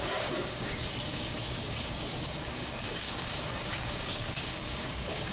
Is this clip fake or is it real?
fake